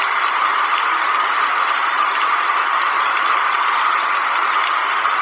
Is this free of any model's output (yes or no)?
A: yes